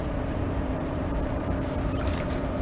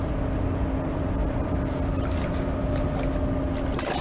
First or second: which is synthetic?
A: first